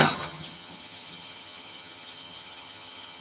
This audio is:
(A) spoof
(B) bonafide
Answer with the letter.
A